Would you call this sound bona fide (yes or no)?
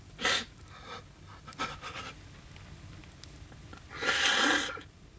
yes